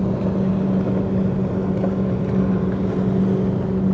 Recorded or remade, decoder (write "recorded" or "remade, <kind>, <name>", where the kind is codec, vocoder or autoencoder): recorded